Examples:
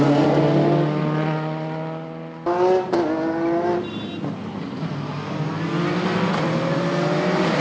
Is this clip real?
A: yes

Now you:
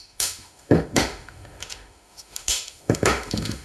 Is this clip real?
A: no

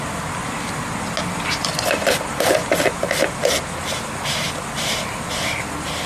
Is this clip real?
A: yes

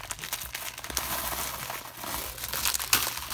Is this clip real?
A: yes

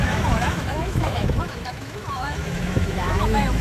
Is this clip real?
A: no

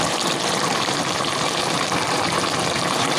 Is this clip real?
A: no